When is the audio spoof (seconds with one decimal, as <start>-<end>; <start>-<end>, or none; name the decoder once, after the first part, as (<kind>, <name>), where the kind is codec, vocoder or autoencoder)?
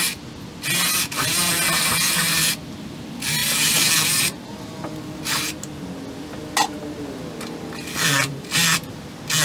none